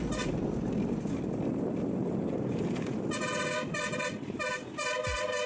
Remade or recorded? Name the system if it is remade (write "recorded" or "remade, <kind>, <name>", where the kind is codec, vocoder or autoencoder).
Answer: recorded